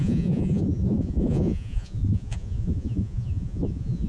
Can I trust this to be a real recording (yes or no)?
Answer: no